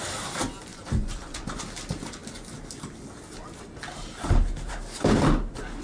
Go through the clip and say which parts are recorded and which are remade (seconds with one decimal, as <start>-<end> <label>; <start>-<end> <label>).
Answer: 0.0-0.7 recorded; 0.7-1.6 remade; 1.6-5.8 recorded